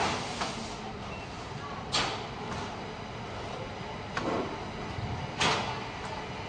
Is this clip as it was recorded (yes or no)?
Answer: yes